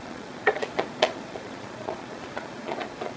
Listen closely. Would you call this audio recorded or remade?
remade